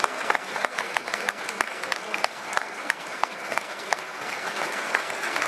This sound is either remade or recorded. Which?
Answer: remade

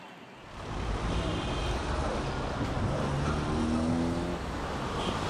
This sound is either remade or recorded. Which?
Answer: recorded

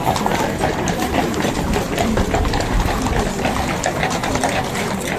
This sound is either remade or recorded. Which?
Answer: recorded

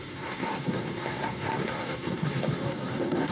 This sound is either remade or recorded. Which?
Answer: remade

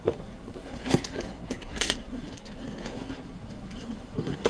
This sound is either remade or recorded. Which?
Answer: remade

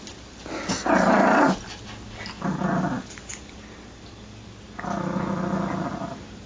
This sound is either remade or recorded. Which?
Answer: recorded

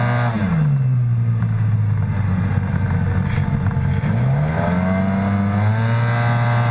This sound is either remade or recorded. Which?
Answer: recorded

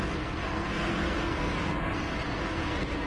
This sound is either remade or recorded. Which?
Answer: remade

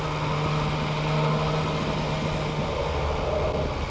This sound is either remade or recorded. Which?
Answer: recorded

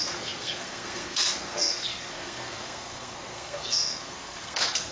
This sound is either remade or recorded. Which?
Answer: remade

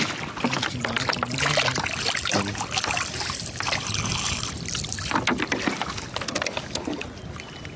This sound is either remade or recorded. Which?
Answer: recorded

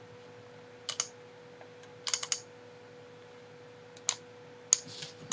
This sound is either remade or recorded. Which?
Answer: recorded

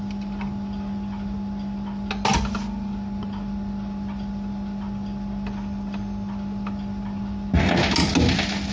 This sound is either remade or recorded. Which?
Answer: recorded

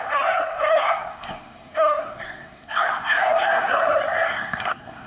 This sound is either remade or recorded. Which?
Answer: remade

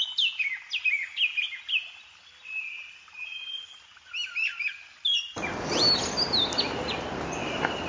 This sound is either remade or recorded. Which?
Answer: recorded